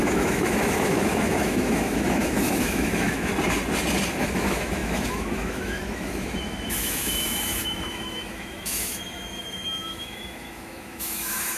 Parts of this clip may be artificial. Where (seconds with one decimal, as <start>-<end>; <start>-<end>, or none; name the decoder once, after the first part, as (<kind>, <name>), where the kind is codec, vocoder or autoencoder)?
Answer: 0.0-3.3 (autoencoder, DAC-VAE); 4.2-11.6